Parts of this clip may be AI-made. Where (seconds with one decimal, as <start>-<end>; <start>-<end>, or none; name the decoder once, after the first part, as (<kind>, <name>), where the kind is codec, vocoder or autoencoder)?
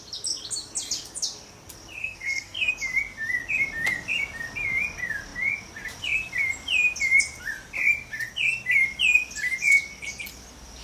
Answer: 2.0-2.7 (codec, SNAC)